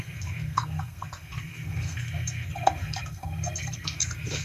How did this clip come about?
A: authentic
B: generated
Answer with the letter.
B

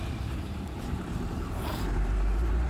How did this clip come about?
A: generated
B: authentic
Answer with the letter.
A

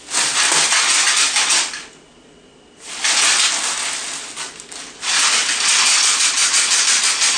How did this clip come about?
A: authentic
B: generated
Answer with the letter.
A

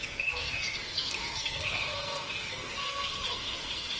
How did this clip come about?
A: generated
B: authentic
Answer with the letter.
A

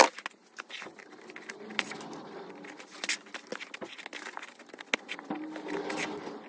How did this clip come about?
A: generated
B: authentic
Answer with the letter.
B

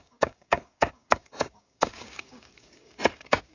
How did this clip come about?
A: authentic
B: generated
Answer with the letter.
B